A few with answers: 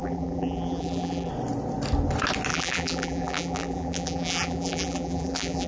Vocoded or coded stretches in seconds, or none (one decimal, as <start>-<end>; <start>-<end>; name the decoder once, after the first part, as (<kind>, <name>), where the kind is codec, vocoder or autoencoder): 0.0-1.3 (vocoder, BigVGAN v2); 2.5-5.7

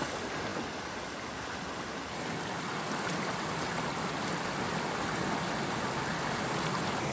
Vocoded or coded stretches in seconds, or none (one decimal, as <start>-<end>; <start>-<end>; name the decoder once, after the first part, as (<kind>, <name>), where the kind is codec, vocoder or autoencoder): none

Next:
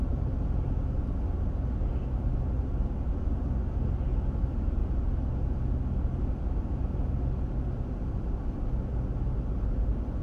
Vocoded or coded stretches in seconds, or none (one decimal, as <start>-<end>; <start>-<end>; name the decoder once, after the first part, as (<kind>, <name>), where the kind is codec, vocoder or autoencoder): none